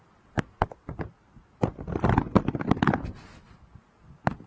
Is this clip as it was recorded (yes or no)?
yes